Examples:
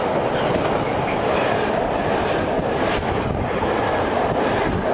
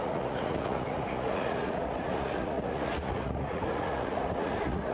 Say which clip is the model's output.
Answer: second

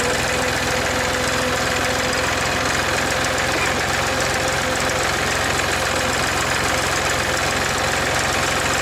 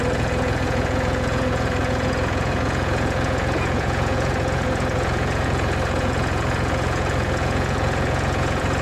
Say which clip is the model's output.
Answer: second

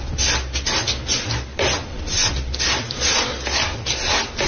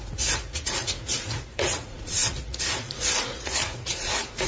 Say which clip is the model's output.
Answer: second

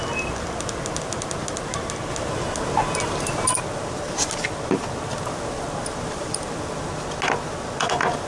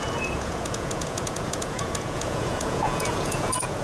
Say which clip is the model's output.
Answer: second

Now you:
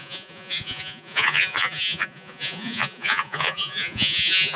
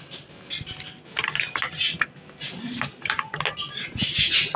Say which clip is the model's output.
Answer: first